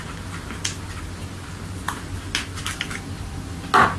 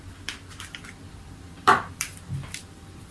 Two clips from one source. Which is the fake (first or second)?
second